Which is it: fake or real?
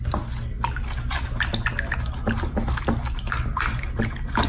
real